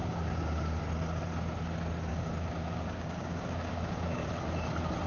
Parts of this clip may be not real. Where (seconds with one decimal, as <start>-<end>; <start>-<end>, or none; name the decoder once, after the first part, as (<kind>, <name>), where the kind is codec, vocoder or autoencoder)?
0.0-0.8 (codec, DAC); 2.1-4.3